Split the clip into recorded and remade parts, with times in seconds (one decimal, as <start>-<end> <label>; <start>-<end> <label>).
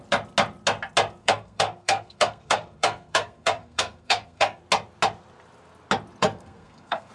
0.0-1.2 recorded; 1.2-4.6 remade; 4.6-6.2 recorded; 6.2-7.1 remade